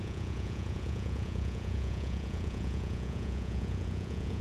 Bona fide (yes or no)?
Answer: no